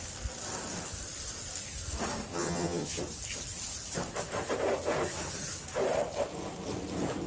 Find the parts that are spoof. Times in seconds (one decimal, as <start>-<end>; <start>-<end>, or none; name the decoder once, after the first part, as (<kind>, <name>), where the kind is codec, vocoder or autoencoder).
2.3-3.0 (vocoder, HiFi-GAN)